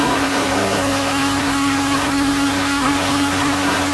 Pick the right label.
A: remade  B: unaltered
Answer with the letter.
A